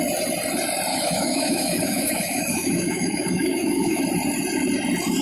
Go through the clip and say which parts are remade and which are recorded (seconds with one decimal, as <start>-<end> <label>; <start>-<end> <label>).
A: 0.0-0.9 recorded; 0.9-4.0 remade; 4.0-5.2 recorded